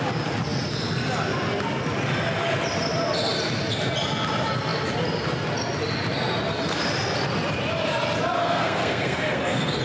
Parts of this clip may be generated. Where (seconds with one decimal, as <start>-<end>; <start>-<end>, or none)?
8.4-9.8